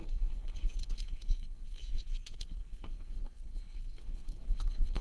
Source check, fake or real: fake